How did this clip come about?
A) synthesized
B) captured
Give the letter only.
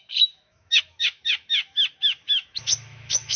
A